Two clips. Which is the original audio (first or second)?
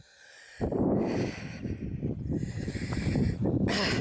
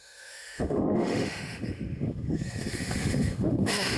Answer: first